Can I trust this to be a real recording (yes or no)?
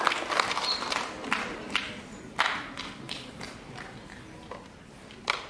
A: yes